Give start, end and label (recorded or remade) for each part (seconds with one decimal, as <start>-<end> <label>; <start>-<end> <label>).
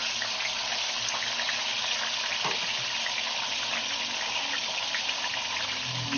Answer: 0.0-6.2 recorded